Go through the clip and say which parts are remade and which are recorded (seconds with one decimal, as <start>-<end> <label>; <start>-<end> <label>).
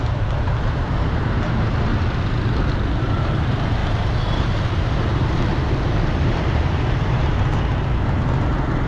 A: 0.0-1.9 remade; 1.9-3.0 recorded; 3.0-7.2 remade; 7.2-8.5 recorded; 8.5-8.9 remade